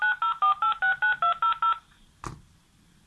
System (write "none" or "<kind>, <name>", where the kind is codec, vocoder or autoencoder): none